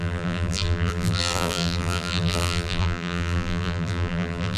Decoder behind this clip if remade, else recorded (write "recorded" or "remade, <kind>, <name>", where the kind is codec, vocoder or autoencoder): remade, vocoder, BigVGAN v2